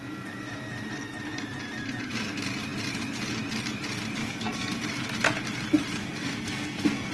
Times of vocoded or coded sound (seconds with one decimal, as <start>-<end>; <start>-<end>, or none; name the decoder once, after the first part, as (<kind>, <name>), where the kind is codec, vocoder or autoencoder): 4.2-4.8 (codec, SNAC); 6.0-7.1